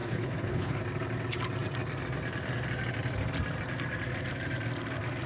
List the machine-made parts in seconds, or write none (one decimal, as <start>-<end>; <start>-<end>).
0.0-0.8